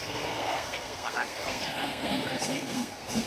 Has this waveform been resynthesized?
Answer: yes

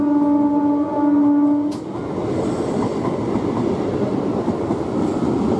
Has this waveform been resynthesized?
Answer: no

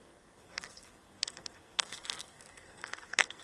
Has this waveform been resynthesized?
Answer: yes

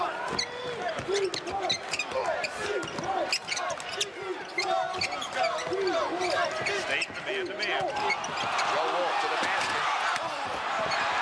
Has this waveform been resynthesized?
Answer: no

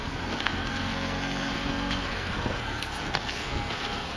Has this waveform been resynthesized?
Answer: yes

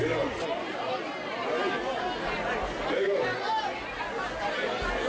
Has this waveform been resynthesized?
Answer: no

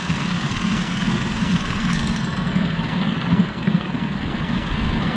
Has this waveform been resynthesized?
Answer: yes